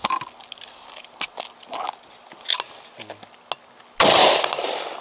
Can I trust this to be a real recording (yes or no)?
yes